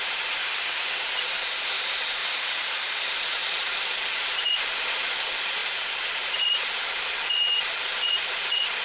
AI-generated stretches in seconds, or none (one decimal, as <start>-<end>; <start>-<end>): 0.0-0.4; 0.9-2.2; 3.0-8.8